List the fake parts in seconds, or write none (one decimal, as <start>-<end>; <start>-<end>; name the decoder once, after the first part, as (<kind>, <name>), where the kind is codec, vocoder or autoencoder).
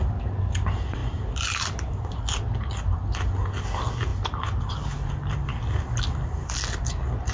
none